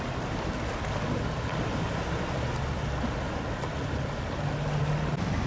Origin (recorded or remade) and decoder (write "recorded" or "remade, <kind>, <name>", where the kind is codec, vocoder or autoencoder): recorded